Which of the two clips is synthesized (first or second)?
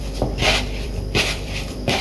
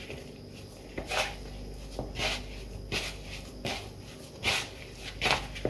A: first